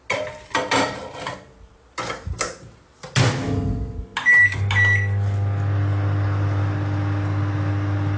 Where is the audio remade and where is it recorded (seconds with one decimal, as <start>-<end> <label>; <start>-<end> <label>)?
0.0-8.2 recorded